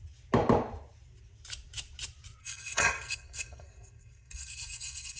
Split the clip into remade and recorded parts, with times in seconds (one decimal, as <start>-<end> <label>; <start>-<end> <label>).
0.0-2.4 recorded; 2.4-5.2 remade